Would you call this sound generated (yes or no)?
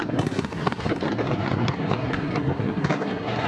yes